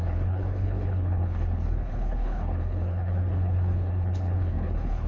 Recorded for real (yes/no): no